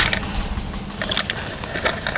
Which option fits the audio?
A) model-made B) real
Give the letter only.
B